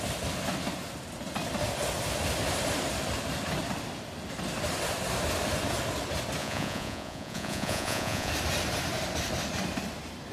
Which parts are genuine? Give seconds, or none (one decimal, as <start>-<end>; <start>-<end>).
0.0-6.4; 8.3-10.3